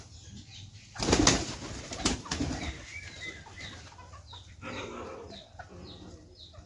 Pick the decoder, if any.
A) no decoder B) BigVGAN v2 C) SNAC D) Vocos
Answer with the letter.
A